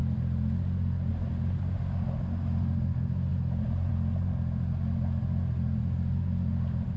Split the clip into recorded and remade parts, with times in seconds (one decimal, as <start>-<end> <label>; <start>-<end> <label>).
0.0-7.0 recorded